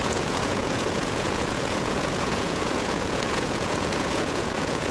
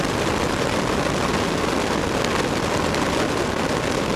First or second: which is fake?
first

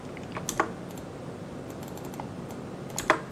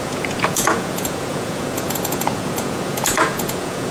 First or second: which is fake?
second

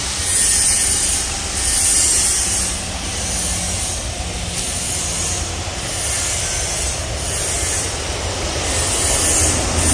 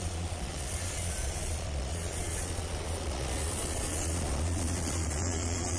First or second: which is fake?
second